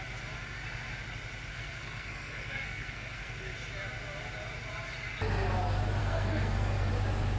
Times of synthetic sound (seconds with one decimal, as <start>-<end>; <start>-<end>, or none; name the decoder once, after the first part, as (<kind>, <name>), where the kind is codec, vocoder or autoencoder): 1.5-3.5 (codec, SNAC); 6.0-6.9